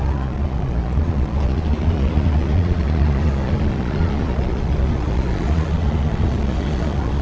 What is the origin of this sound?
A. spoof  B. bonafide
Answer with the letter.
A